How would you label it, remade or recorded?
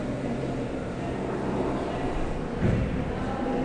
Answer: recorded